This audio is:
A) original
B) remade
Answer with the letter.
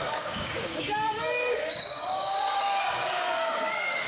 B